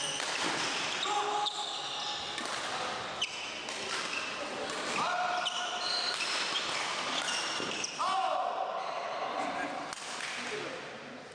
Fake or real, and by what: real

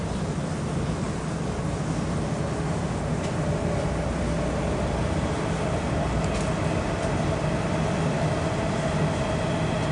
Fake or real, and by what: real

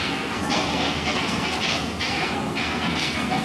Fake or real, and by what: fake, codec, SNAC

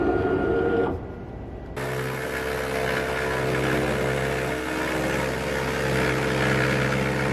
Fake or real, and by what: real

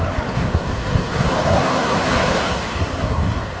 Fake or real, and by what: fake, codec, SNAC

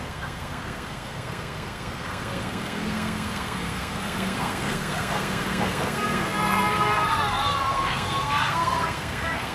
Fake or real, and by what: fake, codec, SNAC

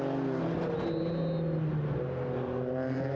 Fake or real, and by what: real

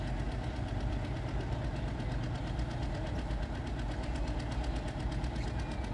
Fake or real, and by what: real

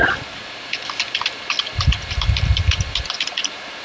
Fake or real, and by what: real